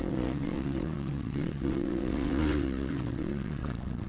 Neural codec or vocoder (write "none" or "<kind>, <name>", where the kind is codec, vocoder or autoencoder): vocoder, WaveNeXt